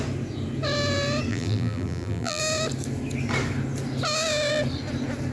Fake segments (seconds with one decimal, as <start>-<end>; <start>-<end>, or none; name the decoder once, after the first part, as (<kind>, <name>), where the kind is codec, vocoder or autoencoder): 1.3-2.4 (vocoder, BigVGAN v2)

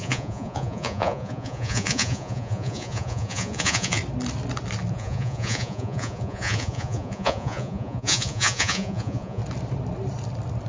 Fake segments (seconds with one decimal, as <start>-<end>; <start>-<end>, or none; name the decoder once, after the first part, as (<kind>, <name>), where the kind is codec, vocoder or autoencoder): 0.0-4.0 (vocoder, Vocos); 4.9-9.4

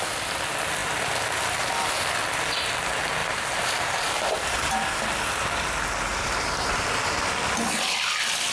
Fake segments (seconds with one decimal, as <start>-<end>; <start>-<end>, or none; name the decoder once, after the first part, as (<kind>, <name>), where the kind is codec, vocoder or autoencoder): 3.2-5.0 (vocoder, BigVGAN v2); 6.1-7.0

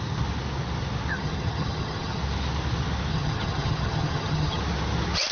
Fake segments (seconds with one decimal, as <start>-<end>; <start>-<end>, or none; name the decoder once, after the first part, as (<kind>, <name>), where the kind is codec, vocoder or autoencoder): 1.1-2.2 (vocoder, HiFi-GAN); 3.1-4.6